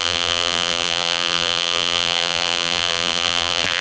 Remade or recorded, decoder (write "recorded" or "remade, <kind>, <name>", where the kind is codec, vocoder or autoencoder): remade, vocoder, BigVGAN v2